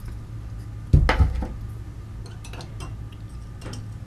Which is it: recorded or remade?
recorded